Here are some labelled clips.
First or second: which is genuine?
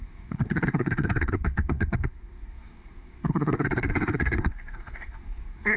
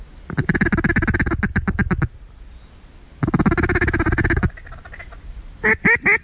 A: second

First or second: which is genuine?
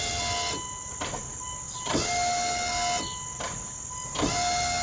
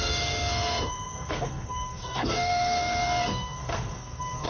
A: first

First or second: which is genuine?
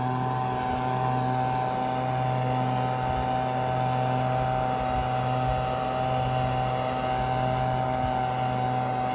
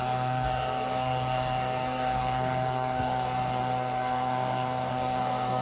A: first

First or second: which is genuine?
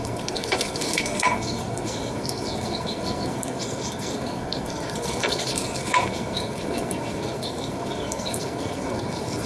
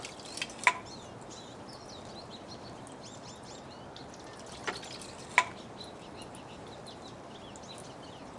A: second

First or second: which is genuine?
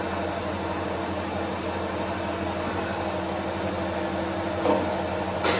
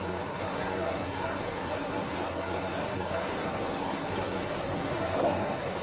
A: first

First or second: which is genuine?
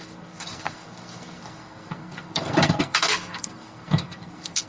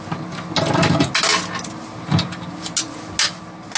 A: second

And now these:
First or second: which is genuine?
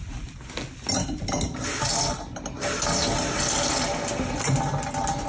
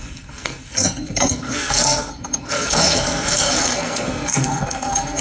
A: first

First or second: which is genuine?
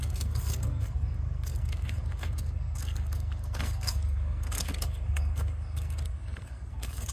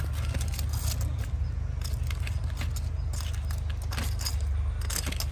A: second